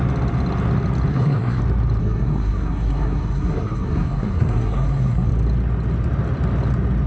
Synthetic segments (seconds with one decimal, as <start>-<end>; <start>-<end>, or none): 1.1-1.6; 2.0-5.3